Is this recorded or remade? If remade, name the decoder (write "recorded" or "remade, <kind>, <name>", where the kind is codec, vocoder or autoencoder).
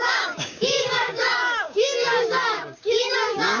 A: remade, codec, DAC